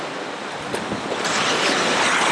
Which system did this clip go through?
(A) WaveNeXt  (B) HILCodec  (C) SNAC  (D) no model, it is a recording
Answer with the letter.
D